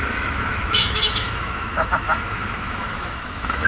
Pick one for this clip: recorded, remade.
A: remade